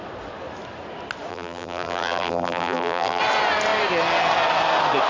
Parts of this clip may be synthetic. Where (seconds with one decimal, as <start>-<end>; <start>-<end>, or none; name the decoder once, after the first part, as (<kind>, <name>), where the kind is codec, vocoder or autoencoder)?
1.3-3.2 (vocoder, BigVGAN v2)